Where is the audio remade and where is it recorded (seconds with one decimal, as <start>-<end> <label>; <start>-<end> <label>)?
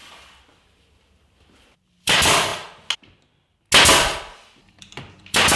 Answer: 0.0-2.5 remade; 2.5-4.7 recorded; 4.7-5.6 remade